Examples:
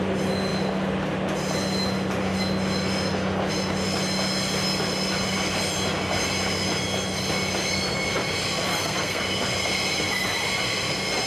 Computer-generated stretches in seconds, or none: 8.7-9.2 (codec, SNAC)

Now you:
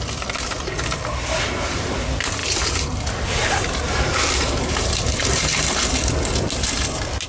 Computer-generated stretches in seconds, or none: none

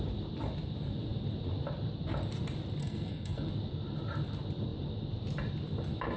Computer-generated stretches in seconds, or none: 2.8-3.5 (codec, SNAC)

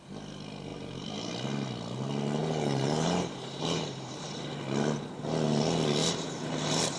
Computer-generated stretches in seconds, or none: 0.7-1.3 (vocoder, BigVGAN v2); 2.4-4.4; 6.0-7.0

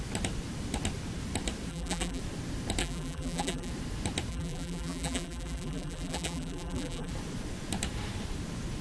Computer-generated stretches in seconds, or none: 1.7-2.2 (vocoder, BigVGAN v2); 2.8-3.7; 4.3-7.1

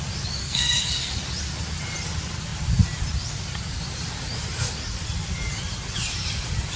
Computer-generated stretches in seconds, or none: 0.4-1.2 (codec, SNAC)

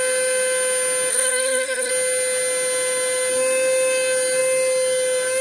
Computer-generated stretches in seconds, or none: 1.1-1.9 (codec, SNAC)

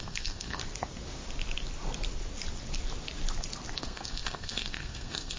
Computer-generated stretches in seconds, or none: 0.0-0.6 (codec, SNAC); 3.8-5.4